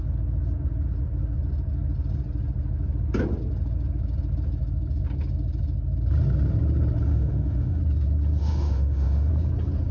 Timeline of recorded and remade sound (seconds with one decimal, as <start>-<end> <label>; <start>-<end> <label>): 0.0-7.1 recorded; 7.1-7.8 remade; 7.8-8.4 recorded; 8.4-9.3 remade; 9.3-9.9 recorded